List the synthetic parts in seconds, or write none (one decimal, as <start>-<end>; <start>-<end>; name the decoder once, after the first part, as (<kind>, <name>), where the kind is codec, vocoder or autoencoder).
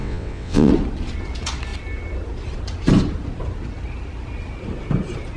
0.0-0.7 (vocoder, WaveNeXt)